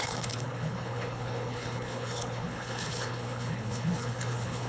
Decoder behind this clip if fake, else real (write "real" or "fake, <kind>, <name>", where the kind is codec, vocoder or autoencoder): fake, codec, HILCodec